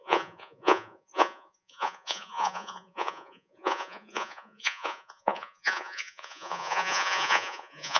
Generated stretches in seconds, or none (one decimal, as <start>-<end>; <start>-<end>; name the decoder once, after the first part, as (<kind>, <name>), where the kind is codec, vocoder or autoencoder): 0.0-8.0 (vocoder, Vocos)